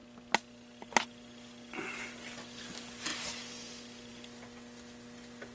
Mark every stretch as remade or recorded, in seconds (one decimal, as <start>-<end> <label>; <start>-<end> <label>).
0.0-5.5 recorded